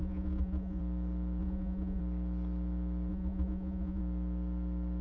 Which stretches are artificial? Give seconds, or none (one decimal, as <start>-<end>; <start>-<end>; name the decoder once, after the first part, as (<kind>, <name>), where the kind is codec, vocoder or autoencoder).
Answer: 0.0-0.8 (vocoder, Vocos); 1.4-2.0; 3.1-4.0